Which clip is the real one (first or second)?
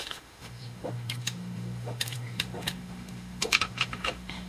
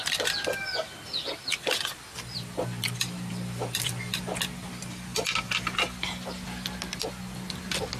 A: second